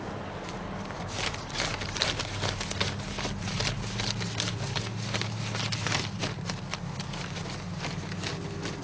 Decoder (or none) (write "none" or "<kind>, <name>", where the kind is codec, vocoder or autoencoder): none